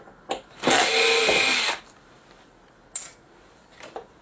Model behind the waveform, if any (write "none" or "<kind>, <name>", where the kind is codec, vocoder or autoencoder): none